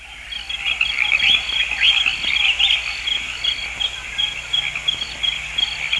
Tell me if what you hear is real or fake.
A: real